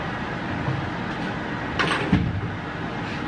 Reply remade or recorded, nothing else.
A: recorded